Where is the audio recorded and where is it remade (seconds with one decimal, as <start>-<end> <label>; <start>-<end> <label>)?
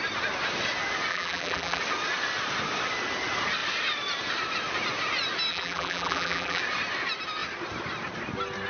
0.0-1.1 recorded; 1.1-1.8 remade; 1.8-5.5 recorded; 5.5-6.6 remade; 6.6-8.7 recorded